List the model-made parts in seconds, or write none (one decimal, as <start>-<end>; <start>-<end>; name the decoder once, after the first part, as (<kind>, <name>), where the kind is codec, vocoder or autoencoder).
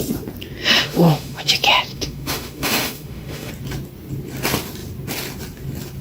0.8-1.5 (autoencoder, DAC-VAE); 1.9-3.5